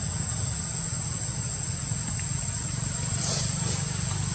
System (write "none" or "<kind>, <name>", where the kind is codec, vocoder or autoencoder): none